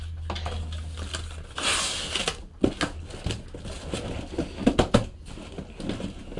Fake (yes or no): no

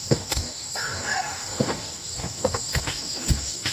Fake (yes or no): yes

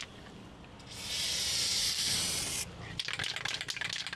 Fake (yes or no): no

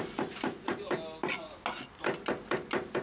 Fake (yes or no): no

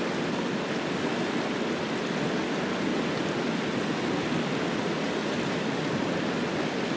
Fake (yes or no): no